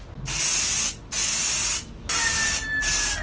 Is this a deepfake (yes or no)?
no